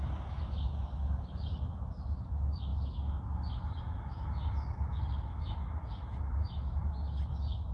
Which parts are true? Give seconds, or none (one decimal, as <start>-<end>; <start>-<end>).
none